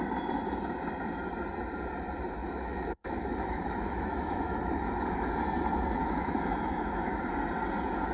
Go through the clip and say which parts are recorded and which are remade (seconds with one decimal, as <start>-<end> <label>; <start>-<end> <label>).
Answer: 0.0-2.4 recorded; 2.4-5.3 remade; 5.3-6.0 recorded; 6.0-7.1 remade; 7.1-8.1 recorded